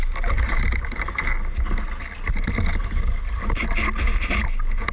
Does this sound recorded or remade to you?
recorded